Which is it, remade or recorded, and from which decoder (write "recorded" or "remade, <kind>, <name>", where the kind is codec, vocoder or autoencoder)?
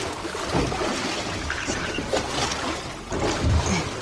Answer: recorded